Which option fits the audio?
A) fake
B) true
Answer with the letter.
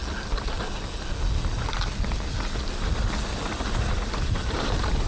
B